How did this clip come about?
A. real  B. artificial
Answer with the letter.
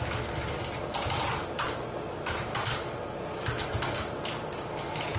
A